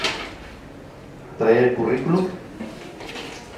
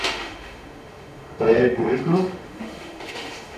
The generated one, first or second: second